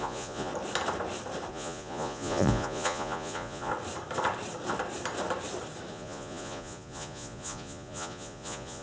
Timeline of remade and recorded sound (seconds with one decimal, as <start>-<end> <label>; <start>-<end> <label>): 0.0-0.5 remade; 0.5-1.5 recorded; 1.5-3.7 remade; 3.7-5.9 recorded; 5.9-8.8 remade